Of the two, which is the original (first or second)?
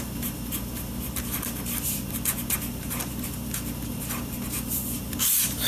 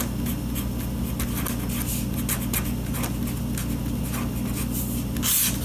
second